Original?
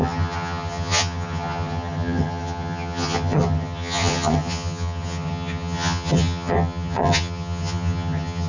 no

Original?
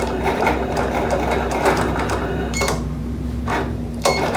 no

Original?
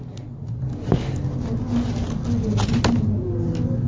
yes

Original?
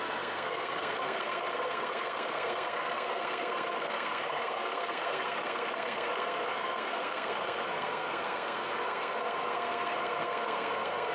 no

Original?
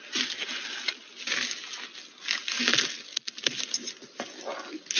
yes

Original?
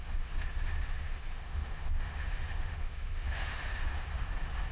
no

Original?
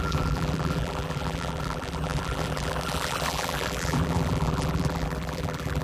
no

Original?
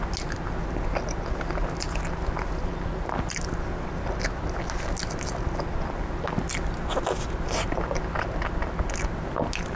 yes